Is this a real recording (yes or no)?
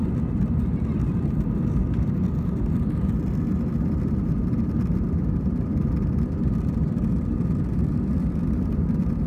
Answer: yes